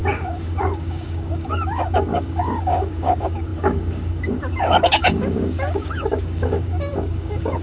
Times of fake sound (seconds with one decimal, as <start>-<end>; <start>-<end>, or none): 0.0-7.6